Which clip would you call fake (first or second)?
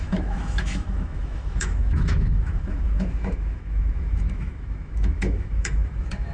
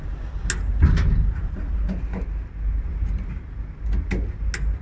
first